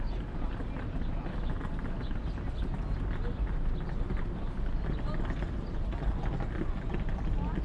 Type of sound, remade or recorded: recorded